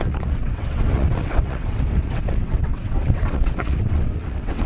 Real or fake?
fake